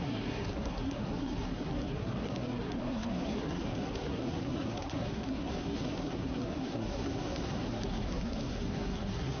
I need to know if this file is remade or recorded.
remade